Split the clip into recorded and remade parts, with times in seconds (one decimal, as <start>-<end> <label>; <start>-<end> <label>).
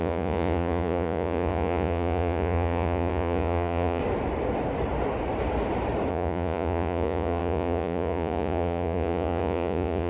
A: 0.0-4.0 remade; 4.0-6.1 recorded; 6.1-10.1 remade